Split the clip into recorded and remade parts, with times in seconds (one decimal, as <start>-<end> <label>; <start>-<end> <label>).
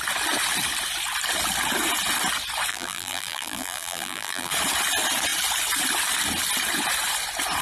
0.0-2.7 recorded; 2.7-4.5 remade; 4.5-7.6 recorded